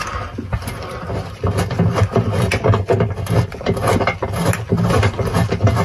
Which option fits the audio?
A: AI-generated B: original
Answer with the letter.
B